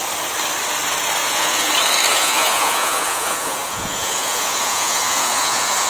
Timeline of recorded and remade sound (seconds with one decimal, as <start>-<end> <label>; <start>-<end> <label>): 0.0-1.2 recorded; 1.2-1.7 remade; 1.7-2.1 recorded; 2.1-5.9 remade